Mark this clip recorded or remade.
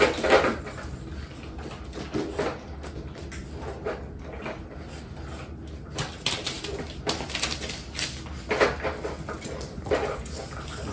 recorded